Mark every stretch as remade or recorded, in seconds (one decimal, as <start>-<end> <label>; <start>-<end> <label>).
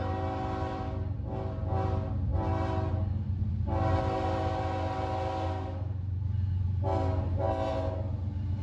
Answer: 0.0-8.6 recorded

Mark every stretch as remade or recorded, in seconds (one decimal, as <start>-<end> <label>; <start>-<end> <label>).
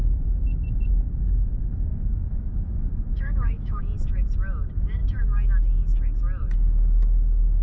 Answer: 0.0-1.9 recorded; 1.9-3.8 remade; 3.8-7.6 recorded